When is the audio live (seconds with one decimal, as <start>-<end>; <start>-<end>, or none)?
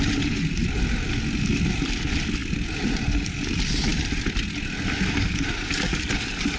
0.0-6.6